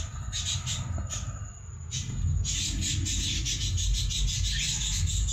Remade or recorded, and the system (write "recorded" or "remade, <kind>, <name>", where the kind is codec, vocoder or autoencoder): recorded